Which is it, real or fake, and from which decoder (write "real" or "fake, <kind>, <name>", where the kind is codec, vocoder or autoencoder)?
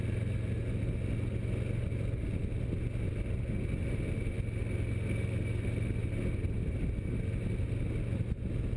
real